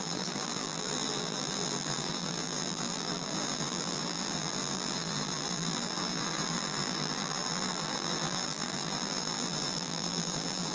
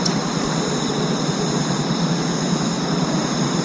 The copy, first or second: first